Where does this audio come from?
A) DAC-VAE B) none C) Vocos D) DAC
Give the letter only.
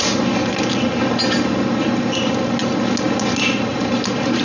B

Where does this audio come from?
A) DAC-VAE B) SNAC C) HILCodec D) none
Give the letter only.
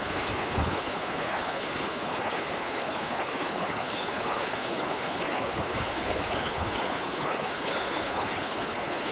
C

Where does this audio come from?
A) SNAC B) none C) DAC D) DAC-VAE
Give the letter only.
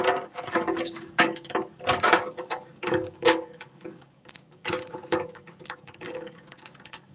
C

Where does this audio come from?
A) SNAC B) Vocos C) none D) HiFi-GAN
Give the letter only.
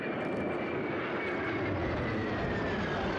C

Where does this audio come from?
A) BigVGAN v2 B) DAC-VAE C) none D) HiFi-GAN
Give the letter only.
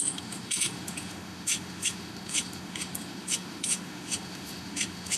B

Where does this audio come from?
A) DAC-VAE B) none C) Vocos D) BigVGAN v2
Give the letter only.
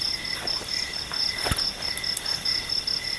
B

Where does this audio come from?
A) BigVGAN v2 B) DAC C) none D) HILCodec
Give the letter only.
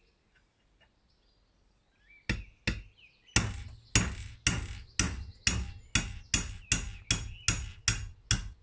C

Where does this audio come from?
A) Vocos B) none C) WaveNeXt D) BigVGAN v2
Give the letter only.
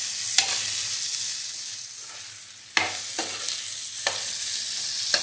B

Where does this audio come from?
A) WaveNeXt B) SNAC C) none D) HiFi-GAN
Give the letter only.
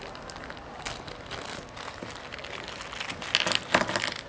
C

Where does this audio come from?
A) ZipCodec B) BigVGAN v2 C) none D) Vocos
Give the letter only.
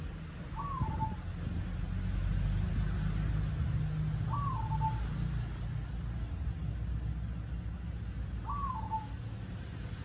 C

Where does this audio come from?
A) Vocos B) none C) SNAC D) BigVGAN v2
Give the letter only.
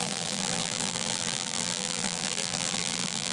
D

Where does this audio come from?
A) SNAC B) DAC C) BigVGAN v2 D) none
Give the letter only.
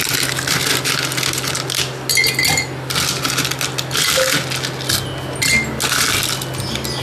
D